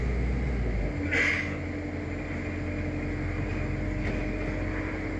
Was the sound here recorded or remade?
recorded